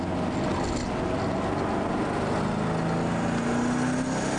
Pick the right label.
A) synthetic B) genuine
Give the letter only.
B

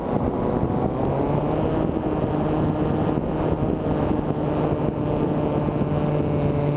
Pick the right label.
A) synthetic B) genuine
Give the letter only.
B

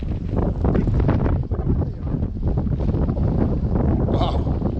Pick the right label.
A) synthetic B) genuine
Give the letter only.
B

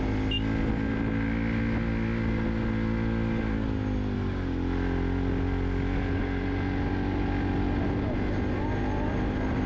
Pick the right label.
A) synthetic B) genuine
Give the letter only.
B